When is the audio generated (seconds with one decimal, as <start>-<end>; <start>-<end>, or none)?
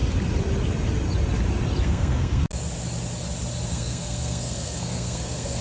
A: 1.8-2.4; 3.7-5.6